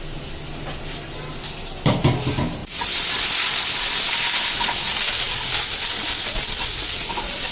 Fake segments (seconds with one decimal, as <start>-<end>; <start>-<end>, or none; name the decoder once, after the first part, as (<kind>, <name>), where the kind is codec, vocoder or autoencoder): none